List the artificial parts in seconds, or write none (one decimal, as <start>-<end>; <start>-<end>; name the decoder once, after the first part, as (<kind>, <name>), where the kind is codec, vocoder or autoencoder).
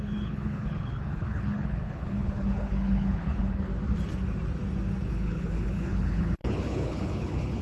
0.0-3.7 (codec, HILCodec); 5.1-7.6